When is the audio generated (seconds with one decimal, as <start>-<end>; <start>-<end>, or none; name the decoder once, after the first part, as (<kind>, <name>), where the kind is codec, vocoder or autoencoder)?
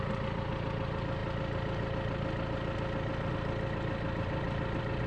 none